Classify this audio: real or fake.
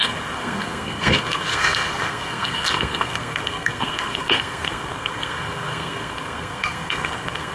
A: fake